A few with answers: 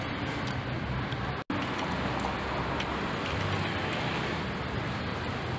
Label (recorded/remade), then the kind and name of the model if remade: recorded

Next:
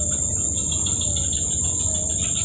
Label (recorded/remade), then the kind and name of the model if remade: recorded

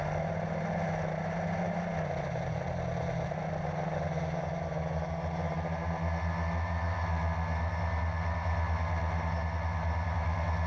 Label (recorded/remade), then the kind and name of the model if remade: recorded